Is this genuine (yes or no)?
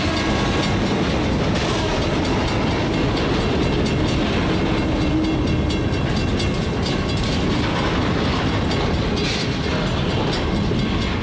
yes